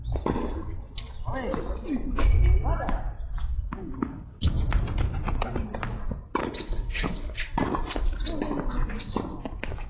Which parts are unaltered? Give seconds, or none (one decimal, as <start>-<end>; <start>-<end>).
0.0-3.8; 4.5-6.4; 7.4-9.9